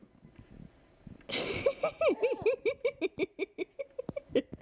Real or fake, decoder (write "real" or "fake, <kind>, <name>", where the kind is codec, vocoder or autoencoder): real